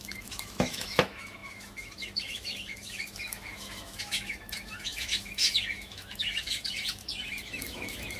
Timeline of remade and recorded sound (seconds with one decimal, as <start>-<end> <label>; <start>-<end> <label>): 0.0-8.2 remade